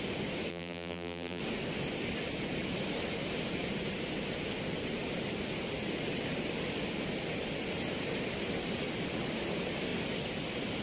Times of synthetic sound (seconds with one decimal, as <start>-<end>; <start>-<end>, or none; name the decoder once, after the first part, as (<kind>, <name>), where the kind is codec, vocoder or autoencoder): 0.5-1.4 (vocoder, BigVGAN v2)